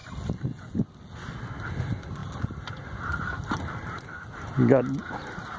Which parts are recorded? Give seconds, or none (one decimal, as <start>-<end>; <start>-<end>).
0.0-5.6